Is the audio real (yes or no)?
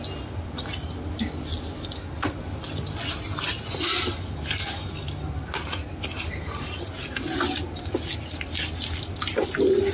yes